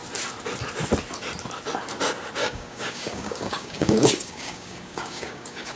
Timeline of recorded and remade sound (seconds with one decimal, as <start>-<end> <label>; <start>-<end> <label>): 0.0-2.4 recorded; 2.4-5.8 remade